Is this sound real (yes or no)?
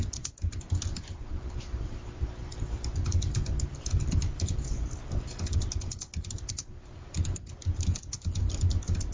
yes